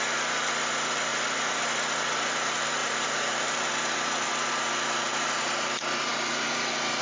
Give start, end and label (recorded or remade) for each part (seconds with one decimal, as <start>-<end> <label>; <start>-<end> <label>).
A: 0.0-1.1 recorded; 1.1-1.6 remade; 1.6-2.8 recorded; 2.8-4.3 remade; 4.3-5.0 recorded; 5.0-6.1 remade; 6.1-7.0 recorded